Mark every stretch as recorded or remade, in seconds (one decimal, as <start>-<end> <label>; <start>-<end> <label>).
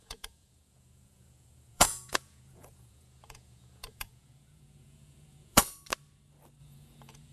0.0-5.6 remade; 5.6-6.6 recorded; 6.6-7.3 remade